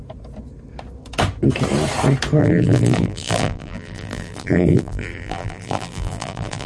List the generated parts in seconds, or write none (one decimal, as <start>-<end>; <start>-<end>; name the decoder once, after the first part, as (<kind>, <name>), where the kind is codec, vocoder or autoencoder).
2.4-6.7 (vocoder, BigVGAN v2)